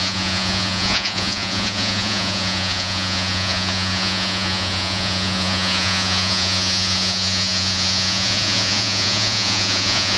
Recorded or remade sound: remade